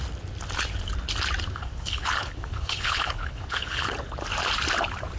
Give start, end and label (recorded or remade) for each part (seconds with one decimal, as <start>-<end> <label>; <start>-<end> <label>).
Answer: 0.0-1.6 recorded; 1.6-3.9 remade; 3.9-5.2 recorded